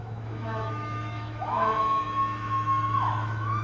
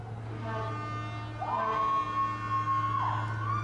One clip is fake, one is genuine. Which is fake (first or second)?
first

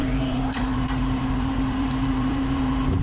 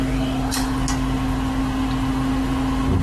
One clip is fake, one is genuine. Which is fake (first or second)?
first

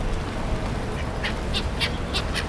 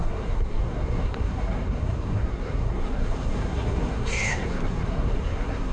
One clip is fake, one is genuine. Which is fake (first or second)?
second